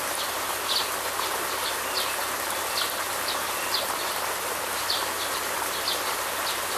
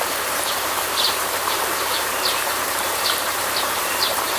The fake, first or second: second